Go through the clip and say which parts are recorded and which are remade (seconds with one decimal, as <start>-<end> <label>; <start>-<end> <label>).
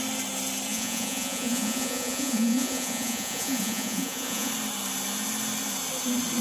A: 0.0-0.7 recorded; 0.7-4.5 remade; 4.5-6.4 recorded